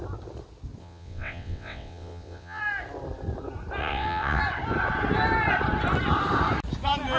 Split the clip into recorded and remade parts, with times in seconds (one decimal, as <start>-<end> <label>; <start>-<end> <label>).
0.0-0.8 recorded; 0.8-2.6 remade; 2.6-3.8 recorded; 3.8-4.4 remade; 4.4-7.2 recorded